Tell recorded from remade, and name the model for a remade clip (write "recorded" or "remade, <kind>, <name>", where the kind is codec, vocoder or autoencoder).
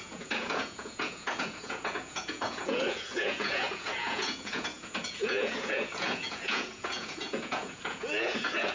remade, vocoder, Vocos